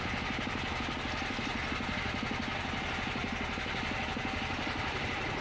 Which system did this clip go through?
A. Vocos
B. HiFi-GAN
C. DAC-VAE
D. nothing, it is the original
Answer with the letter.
D